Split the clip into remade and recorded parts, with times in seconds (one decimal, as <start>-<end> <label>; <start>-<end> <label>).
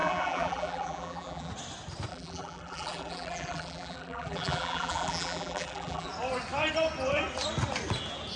0.0-1.5 remade; 1.5-2.1 recorded; 2.1-6.1 remade; 6.1-8.4 recorded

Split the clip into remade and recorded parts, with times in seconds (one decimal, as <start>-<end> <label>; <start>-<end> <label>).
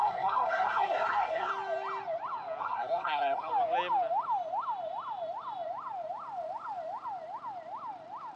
0.0-1.5 remade; 1.5-2.6 recorded; 2.6-3.5 remade; 3.5-8.4 recorded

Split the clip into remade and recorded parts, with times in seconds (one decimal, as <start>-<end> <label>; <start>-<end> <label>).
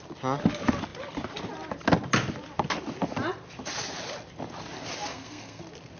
0.0-5.1 recorded; 5.1-5.6 remade; 5.6-6.0 recorded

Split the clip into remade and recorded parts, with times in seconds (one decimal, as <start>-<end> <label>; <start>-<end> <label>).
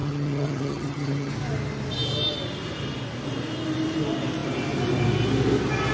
0.0-1.3 remade; 1.3-5.9 recorded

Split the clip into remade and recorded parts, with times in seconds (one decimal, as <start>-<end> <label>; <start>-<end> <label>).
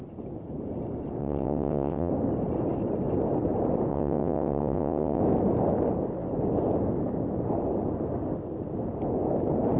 0.0-1.2 recorded; 1.2-2.1 remade; 2.1-3.9 recorded; 3.9-5.2 remade; 5.2-9.8 recorded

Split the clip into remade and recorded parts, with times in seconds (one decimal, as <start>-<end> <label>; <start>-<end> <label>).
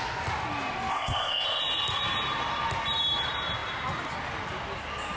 0.0-0.9 recorded; 0.9-1.6 remade; 1.6-5.2 recorded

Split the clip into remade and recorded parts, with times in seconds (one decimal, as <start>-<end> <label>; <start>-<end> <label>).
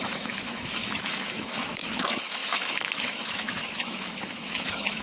0.0-5.0 remade